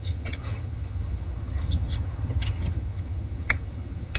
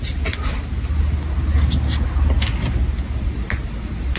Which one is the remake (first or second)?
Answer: first